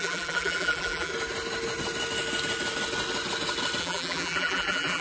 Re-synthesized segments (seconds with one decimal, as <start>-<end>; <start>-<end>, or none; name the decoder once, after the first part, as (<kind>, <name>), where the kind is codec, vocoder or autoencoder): 0.0-1.1 (vocoder, BigVGAN v2); 3.8-5.0